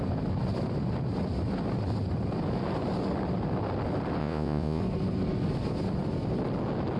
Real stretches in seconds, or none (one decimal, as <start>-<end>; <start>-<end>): 0.0-4.2; 4.8-7.0